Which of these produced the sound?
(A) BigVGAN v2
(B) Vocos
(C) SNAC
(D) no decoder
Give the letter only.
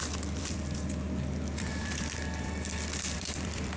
A